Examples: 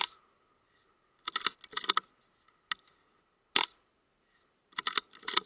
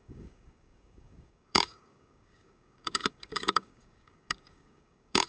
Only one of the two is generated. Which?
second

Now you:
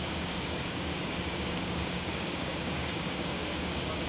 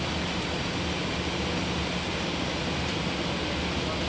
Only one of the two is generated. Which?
first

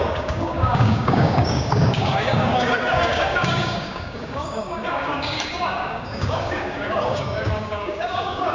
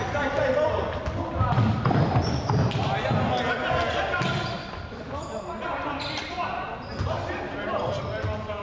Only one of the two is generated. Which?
first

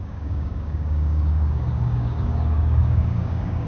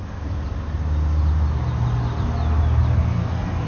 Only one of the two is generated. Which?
first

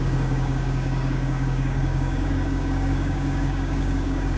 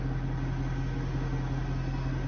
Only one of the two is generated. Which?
first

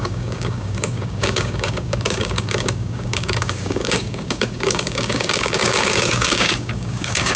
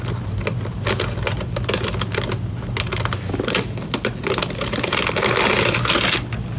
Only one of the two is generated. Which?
first